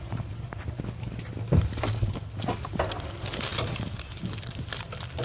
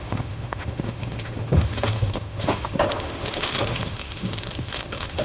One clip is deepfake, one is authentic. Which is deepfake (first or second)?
second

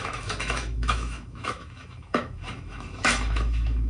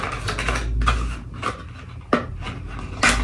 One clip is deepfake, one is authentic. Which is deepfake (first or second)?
first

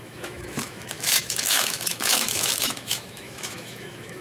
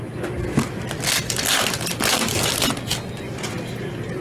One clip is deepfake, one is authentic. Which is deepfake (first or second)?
first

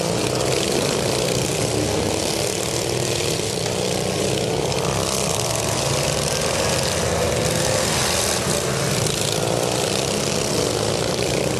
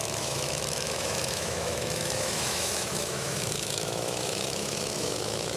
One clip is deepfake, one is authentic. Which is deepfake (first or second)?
second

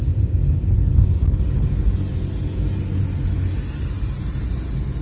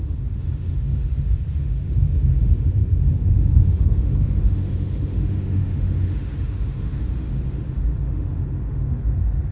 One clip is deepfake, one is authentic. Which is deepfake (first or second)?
second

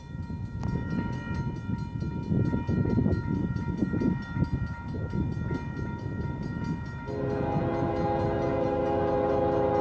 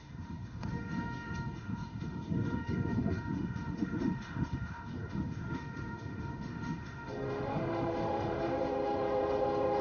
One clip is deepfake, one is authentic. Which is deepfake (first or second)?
second